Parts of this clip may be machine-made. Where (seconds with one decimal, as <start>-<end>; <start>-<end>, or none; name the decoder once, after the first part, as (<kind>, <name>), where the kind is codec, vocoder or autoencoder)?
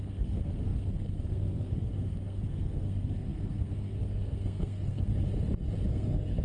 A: 0.0-5.1 (codec, SNAC); 5.9-6.4